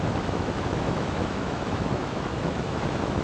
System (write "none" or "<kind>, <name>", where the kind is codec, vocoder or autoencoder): autoencoder, DAC-VAE